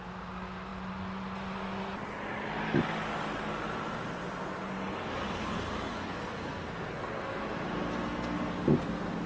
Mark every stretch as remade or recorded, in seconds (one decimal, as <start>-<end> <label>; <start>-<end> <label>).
0.0-5.9 recorded; 5.9-7.4 remade; 7.4-7.9 recorded; 7.9-8.5 remade; 8.5-9.3 recorded